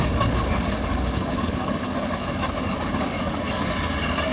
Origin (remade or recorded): remade